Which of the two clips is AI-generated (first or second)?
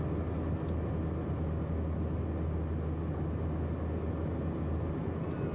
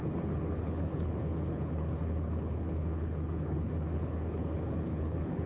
second